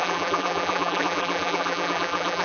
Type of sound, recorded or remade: remade